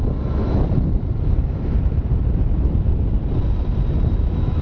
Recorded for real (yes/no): no